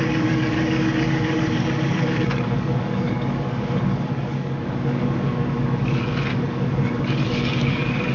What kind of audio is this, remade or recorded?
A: remade